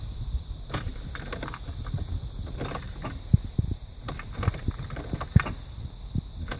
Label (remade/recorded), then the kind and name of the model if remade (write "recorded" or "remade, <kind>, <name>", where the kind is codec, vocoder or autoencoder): recorded